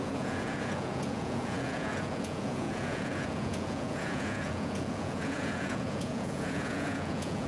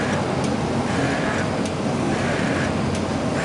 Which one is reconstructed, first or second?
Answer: first